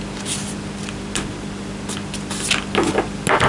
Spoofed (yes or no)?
no